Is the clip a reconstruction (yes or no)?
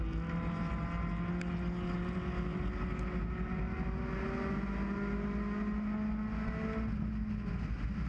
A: no